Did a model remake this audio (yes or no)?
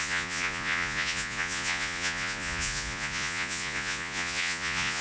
yes